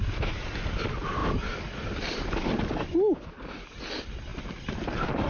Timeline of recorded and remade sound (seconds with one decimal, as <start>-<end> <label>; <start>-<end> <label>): 0.0-4.3 recorded; 4.3-5.3 remade